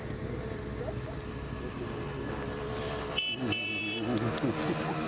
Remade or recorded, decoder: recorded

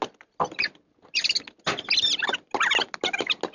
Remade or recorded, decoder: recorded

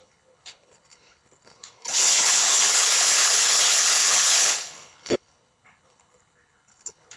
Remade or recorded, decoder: remade, codec, HILCodec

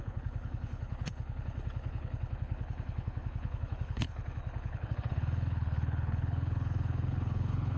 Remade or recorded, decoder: remade, codec, HILCodec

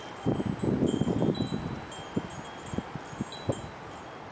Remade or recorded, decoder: recorded